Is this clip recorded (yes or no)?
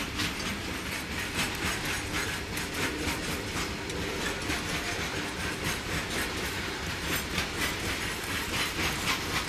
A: yes